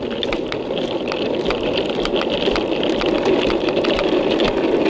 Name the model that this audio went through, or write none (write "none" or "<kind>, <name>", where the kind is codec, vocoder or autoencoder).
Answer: none